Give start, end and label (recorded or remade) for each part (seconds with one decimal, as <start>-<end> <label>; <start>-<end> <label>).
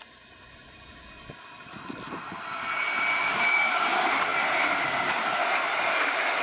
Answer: 0.0-3.2 recorded; 3.2-3.8 remade; 3.8-6.4 recorded